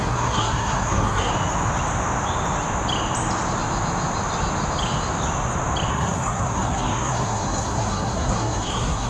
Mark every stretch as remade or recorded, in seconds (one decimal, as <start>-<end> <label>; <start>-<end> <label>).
0.0-1.3 remade; 1.3-5.9 recorded; 5.9-9.1 remade